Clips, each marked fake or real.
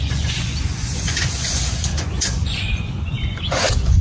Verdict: fake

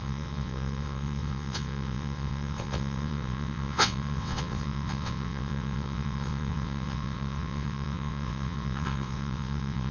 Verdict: fake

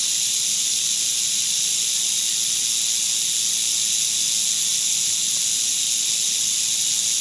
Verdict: real